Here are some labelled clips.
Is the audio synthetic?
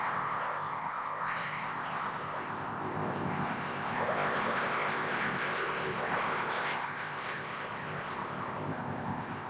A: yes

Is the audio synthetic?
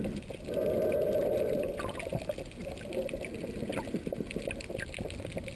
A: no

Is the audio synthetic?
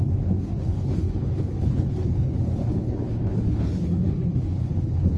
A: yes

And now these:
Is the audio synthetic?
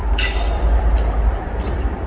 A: yes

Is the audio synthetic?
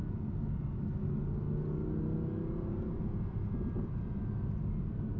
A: no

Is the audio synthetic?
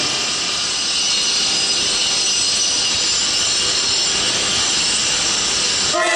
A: no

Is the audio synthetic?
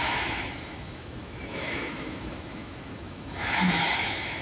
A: yes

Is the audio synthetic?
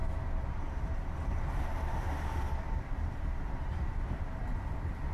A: no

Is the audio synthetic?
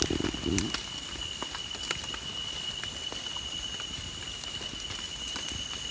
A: no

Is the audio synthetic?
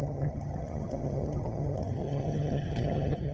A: yes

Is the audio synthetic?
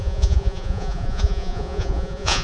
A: yes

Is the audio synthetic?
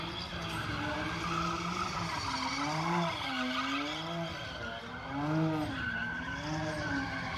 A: no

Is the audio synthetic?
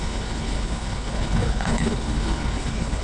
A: yes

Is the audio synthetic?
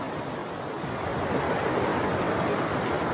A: no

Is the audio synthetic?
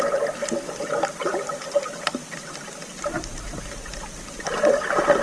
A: no